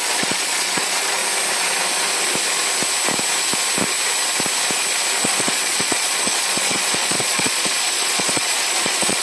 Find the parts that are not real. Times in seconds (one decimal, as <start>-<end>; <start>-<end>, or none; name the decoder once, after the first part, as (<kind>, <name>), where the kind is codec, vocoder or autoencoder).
0.0-1.2 (vocoder, Vocos); 5.2-9.2